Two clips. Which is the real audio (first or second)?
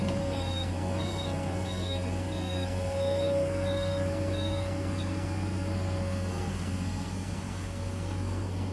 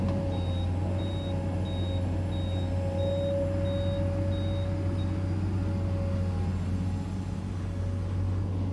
second